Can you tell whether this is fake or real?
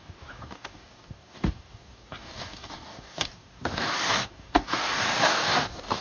fake